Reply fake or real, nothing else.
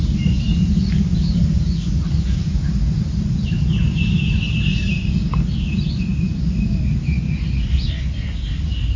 real